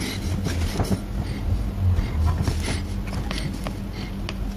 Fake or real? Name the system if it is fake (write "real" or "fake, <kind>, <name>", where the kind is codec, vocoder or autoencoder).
real